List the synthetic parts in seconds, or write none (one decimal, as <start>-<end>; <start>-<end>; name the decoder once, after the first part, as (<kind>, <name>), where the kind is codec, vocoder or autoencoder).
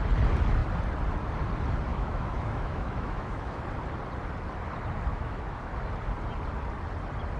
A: 1.9-3.6 (autoencoder, DAC-VAE); 5.1-5.7